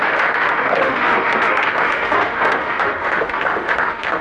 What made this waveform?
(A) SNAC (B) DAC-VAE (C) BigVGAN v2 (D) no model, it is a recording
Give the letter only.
B